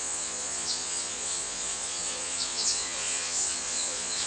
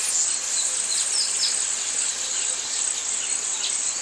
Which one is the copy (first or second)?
first